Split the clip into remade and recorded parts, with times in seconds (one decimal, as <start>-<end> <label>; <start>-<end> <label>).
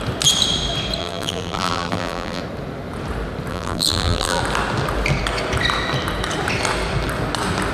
0.0-1.0 recorded; 1.0-2.4 remade; 2.4-3.5 recorded; 3.5-4.4 remade; 4.4-7.7 recorded